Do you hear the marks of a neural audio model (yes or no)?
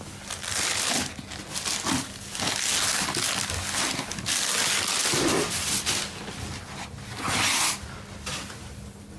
no